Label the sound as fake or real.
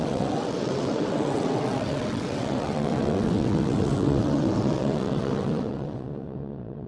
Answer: fake